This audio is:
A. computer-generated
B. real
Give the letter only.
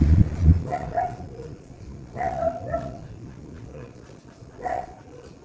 A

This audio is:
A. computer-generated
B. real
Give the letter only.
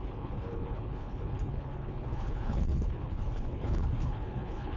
A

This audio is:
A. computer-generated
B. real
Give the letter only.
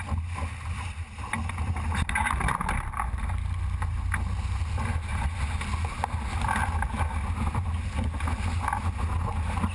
B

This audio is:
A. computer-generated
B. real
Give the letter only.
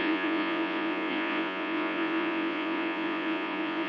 A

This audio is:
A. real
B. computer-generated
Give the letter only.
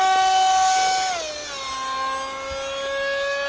A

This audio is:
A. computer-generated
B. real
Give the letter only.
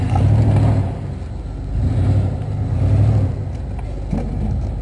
B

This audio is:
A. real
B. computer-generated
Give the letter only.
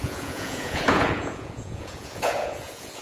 B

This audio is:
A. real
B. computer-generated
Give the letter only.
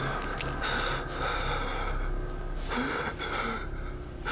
A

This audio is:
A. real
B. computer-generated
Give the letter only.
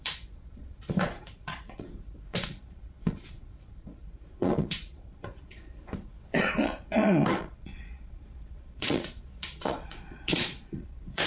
B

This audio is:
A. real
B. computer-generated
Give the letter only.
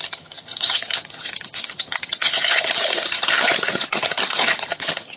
B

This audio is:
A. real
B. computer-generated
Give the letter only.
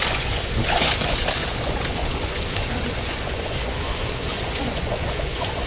B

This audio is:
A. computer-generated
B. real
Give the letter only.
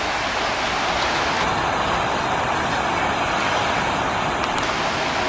B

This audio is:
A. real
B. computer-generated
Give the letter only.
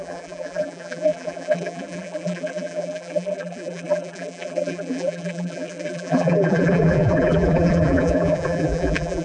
B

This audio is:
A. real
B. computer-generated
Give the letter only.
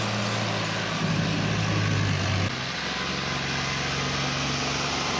A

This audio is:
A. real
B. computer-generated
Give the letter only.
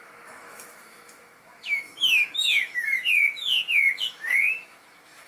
B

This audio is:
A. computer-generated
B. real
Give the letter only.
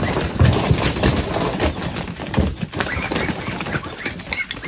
B